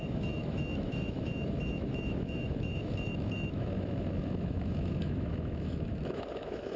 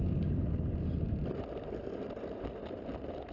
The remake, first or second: first